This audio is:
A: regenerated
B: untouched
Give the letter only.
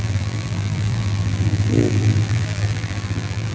A